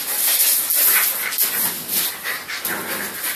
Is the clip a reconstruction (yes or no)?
no